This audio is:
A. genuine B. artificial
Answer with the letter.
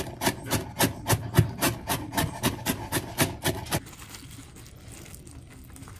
A